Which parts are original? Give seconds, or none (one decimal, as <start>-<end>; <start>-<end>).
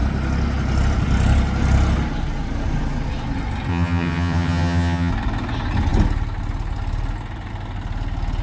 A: 0.0-3.7; 5.1-8.4